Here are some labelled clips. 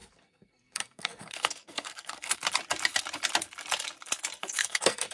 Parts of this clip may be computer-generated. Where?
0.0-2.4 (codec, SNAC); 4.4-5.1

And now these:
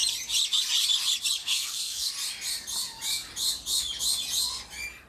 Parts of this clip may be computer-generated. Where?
1.4-2.1 (codec, SNAC)